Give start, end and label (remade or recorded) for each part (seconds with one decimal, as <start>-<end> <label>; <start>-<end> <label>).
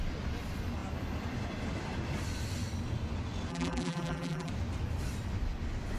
0.0-3.5 recorded; 3.5-4.5 remade; 4.5-6.0 recorded